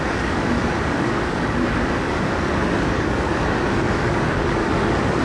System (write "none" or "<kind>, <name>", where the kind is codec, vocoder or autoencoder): codec, DAC